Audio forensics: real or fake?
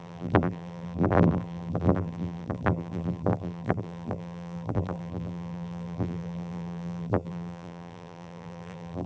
fake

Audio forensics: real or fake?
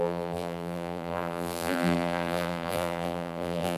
fake